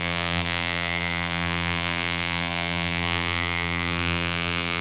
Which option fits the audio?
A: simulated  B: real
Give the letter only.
A